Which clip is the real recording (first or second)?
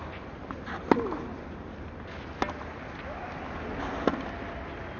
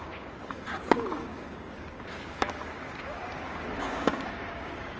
first